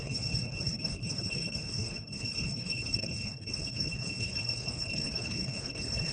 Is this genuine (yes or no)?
no